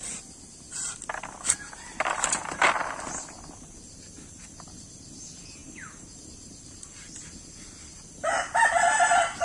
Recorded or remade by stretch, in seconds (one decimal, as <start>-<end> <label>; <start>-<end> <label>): 0.0-9.4 recorded